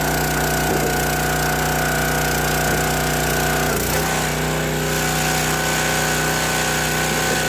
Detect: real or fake real